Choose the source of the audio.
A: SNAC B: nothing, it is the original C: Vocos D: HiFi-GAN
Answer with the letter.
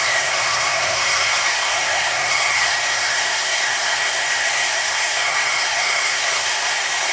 A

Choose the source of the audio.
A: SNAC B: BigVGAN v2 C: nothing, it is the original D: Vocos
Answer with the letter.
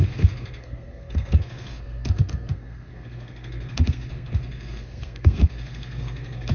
A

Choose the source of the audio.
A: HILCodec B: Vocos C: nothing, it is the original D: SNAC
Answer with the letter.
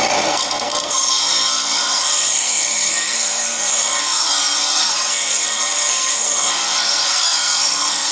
D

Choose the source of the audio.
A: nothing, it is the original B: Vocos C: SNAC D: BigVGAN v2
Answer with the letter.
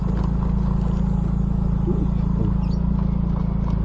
A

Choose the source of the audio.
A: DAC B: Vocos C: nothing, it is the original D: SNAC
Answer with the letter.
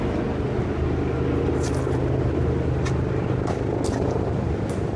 C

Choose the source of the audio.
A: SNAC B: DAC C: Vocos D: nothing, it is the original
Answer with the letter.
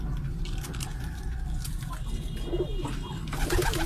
D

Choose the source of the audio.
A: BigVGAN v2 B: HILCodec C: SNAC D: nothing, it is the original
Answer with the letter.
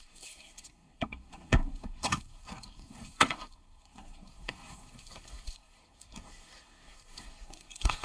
C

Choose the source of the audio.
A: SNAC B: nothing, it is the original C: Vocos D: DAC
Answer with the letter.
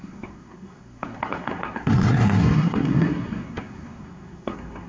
A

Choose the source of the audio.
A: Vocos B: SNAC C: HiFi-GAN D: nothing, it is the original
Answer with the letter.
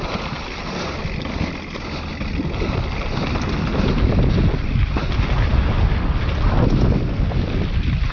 D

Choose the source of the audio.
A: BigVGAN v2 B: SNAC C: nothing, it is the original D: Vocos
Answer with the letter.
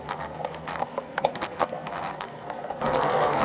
B